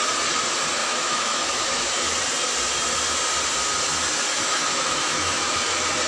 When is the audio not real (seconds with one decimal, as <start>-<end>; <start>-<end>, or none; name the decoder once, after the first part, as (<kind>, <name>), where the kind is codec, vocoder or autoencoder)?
0.8-2.2 (autoencoder, DAC-VAE); 4.3-5.6